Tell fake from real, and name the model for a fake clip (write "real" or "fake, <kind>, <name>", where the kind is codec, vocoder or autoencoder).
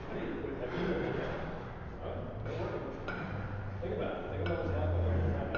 real